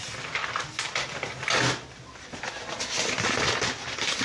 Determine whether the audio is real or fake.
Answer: real